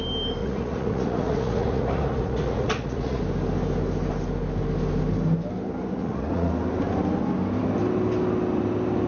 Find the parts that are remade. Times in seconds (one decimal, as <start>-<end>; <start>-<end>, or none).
0.4-3.2; 6.0-6.5

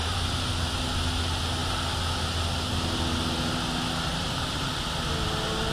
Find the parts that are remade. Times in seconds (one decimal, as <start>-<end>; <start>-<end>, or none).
0.0-0.5; 4.1-4.7

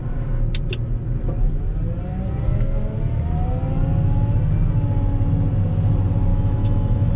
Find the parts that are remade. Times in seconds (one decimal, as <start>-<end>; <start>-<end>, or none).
6.3-7.2

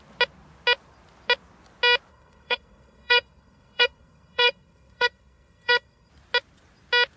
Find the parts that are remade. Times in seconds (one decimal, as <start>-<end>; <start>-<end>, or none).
2.1-6.1